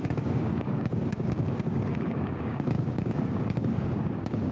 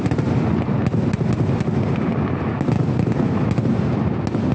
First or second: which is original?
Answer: second